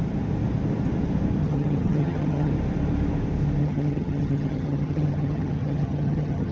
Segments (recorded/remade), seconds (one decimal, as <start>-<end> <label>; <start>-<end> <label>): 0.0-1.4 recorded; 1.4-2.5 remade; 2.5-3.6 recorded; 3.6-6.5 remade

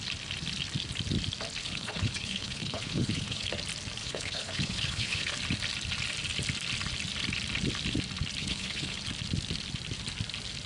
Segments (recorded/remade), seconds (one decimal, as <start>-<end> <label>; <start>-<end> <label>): 0.0-1.6 recorded; 1.6-3.5 remade; 3.5-4.0 recorded; 4.0-5.3 remade; 5.3-8.4 recorded; 8.4-9.0 remade; 9.0-10.7 recorded

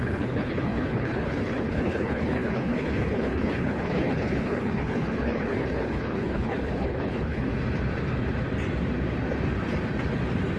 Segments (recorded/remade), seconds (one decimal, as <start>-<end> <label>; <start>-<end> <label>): 0.0-7.5 remade; 7.5-10.6 recorded

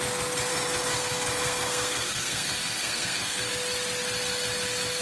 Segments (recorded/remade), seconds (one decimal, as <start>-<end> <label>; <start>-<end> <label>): 0.0-0.5 recorded; 0.5-3.5 remade; 3.5-5.0 recorded

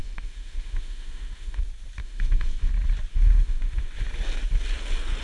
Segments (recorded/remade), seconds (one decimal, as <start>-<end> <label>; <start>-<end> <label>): 0.0-1.6 remade; 1.6-2.0 recorded; 2.0-2.7 remade; 2.7-3.1 recorded; 3.1-3.9 remade; 3.9-5.2 recorded

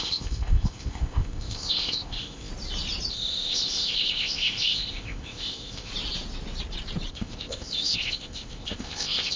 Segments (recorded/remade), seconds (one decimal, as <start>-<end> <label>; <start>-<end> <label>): 0.0-2.5 remade; 2.5-3.1 recorded; 3.1-5.9 remade; 5.9-7.1 recorded; 7.1-9.4 remade

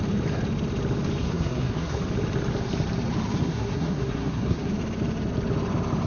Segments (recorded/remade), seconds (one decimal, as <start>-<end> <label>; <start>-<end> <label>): 0.0-1.2 recorded; 1.2-2.0 remade; 2.0-3.4 recorded; 3.4-4.7 remade; 4.7-6.1 recorded